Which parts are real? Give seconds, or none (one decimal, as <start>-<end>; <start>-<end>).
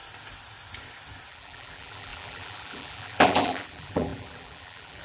0.0-1.3